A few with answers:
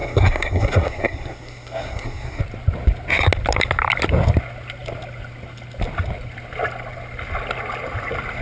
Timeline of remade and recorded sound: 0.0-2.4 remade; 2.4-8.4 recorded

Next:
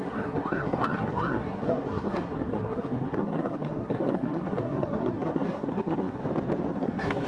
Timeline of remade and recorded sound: 0.0-6.2 remade; 6.2-6.7 recorded; 6.7-7.3 remade

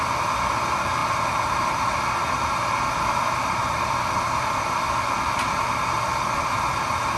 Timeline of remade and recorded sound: 0.0-7.2 recorded